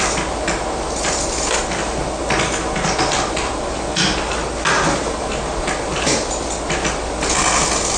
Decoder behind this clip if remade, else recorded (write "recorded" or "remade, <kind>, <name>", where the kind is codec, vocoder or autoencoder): recorded